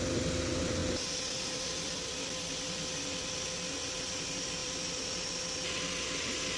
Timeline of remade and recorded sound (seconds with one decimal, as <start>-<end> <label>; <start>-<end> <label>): 0.0-6.6 recorded